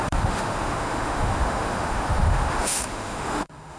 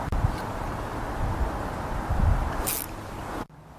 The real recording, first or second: second